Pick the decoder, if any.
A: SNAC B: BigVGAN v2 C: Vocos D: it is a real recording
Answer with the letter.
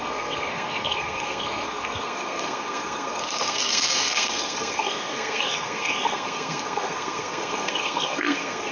A